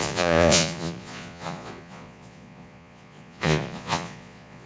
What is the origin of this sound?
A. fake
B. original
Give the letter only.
A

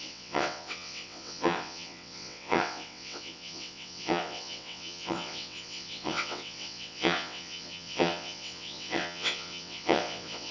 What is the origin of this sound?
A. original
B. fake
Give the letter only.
B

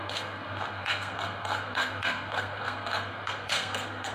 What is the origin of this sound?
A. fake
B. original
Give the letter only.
A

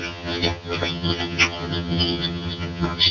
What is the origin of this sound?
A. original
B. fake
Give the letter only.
B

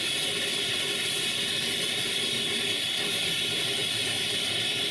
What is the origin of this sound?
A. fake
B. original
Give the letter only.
B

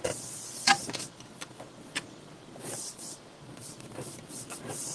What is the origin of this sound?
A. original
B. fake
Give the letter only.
B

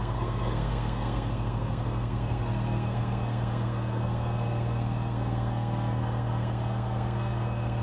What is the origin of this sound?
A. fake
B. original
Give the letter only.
A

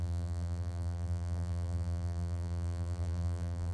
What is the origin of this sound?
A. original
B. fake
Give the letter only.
B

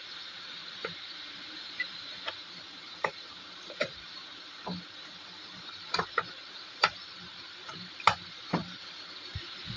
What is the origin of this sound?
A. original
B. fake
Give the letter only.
B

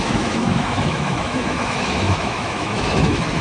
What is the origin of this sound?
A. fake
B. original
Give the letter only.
A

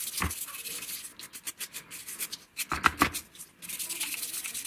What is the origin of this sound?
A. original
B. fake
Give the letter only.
A